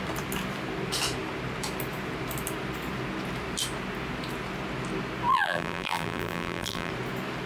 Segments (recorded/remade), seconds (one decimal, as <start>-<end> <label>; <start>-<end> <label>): 0.0-5.3 recorded; 5.3-6.9 remade; 6.9-7.5 recorded